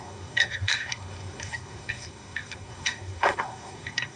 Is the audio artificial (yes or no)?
yes